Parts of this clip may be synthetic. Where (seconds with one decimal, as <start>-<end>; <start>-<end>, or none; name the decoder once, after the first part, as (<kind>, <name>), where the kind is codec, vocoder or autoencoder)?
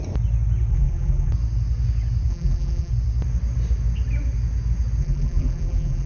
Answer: 0.7-1.3 (vocoder, BigVGAN v2); 2.3-2.9; 5.0-6.1